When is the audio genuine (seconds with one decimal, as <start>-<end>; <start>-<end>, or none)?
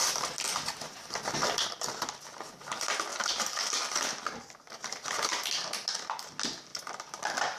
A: 0.0-3.1; 3.8-6.7